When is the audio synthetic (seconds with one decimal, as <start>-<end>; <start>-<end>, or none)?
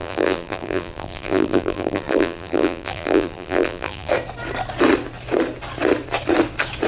0.0-4.1